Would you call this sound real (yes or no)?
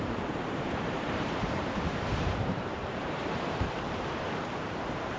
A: no